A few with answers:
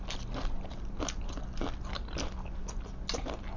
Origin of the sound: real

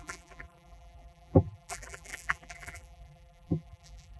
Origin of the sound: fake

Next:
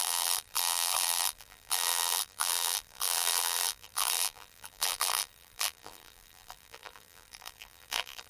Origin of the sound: fake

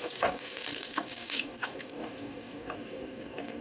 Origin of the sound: fake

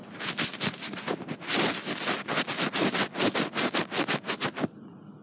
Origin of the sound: real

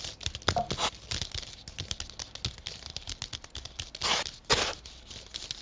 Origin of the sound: real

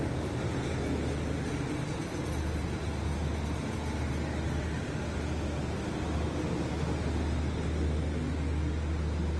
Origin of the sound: real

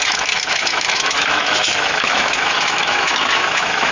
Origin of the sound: fake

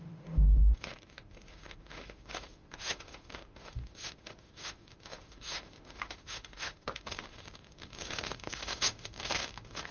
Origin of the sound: fake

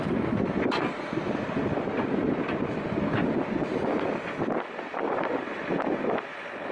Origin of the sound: real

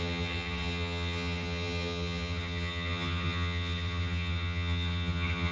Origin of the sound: fake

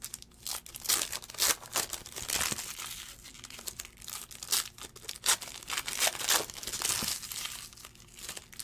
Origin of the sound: real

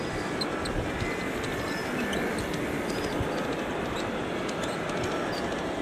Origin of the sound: real